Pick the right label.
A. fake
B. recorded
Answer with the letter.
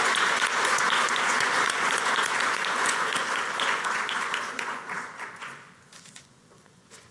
A